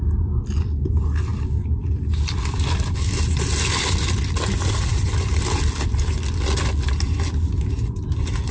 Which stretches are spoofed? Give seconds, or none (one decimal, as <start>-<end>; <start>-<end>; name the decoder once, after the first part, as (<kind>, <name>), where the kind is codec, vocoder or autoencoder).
none